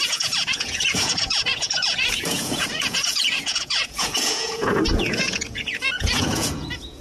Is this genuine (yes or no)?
no